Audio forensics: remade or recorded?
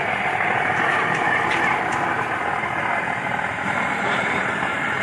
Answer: remade